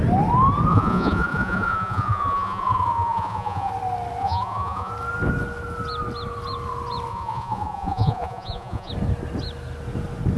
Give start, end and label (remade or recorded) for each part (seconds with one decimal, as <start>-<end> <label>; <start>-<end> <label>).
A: 0.0-0.7 recorded; 0.7-3.7 remade; 3.7-4.2 recorded; 4.2-4.9 remade; 4.9-7.1 recorded; 7.1-8.9 remade; 8.9-10.4 recorded